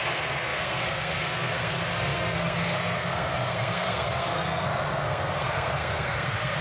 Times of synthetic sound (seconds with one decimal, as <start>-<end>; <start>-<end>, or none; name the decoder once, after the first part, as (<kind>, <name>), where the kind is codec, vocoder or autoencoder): 0.0-6.6 (codec, SNAC)